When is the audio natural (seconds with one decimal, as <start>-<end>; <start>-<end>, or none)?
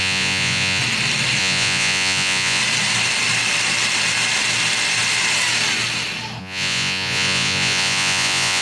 0.8-1.4; 2.6-6.4